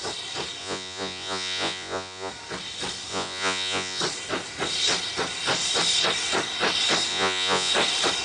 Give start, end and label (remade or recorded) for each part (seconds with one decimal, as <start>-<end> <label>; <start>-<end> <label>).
0.0-0.6 recorded; 0.6-2.3 remade; 2.3-3.1 recorded; 3.1-4.0 remade; 4.0-7.1 recorded; 7.1-7.7 remade; 7.7-8.2 recorded